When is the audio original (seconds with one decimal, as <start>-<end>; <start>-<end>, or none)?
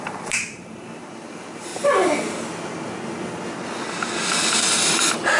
1.7-4.9